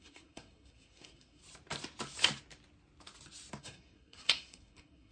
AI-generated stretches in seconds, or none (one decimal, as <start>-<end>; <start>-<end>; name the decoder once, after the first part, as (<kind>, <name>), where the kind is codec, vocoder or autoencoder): 0.0-1.4 (codec, SNAC); 3.6-5.1